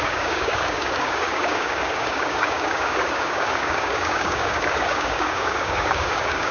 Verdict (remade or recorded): remade